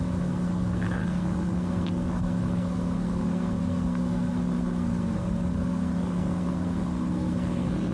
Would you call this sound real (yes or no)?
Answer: no